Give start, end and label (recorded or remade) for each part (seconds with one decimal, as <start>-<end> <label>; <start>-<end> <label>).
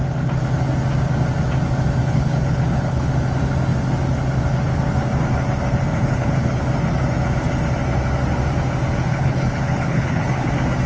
0.0-2.0 recorded; 2.0-3.1 remade; 3.1-5.9 recorded; 5.9-6.6 remade; 6.6-9.1 recorded; 9.1-10.5 remade; 10.5-10.9 recorded